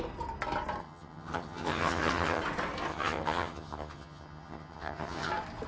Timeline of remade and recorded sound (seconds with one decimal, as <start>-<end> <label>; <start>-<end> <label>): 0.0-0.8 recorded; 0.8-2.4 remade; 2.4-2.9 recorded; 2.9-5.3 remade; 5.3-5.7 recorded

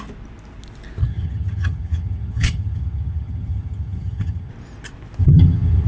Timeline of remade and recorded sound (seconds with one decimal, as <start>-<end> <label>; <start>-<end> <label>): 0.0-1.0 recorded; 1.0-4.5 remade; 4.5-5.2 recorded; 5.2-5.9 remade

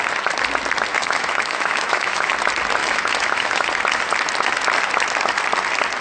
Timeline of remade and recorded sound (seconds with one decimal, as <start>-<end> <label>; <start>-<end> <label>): 0.0-0.9 recorded; 0.9-2.3 remade; 2.3-2.8 recorded; 2.8-3.7 remade; 3.7-6.0 recorded